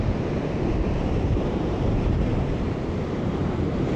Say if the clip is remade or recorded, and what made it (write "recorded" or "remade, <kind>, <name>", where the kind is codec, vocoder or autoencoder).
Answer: remade, vocoder, BigVGAN v2